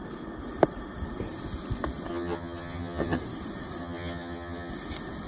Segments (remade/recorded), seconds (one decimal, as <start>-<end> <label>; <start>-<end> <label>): 0.0-2.1 recorded; 2.1-3.2 remade; 3.2-3.8 recorded; 3.8-4.7 remade; 4.7-5.3 recorded